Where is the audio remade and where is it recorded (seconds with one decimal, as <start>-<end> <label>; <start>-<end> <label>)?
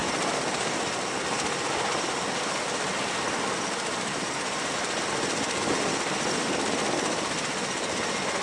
0.0-3.9 recorded; 3.9-4.7 remade; 4.7-8.4 recorded